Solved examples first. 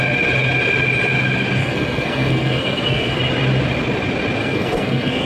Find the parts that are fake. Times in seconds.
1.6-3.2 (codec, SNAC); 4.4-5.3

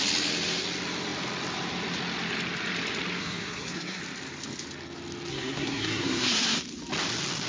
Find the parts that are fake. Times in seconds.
3.2-4.0 (codec, SNAC); 5.3-6.6

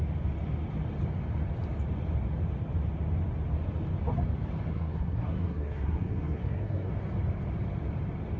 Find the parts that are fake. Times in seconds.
4.7-6.9 (codec, SNAC)

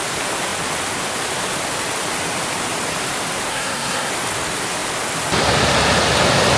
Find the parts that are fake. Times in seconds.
3.5-4.1 (codec, SNAC)

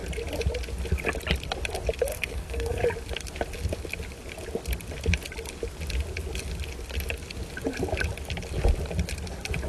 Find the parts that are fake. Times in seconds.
2.1-2.8 (codec, SNAC)